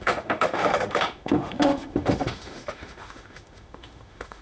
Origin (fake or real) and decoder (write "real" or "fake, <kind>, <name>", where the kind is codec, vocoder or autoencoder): fake, autoencoder, DAC-VAE